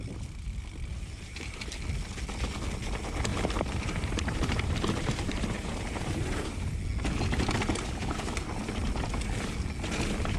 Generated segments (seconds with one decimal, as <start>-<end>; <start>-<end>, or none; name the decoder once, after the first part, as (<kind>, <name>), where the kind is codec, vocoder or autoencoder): 0.9-1.6 (vocoder, BigVGAN v2); 3.3-6.8